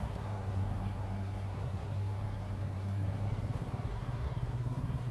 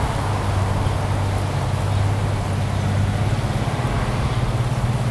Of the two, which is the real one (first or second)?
second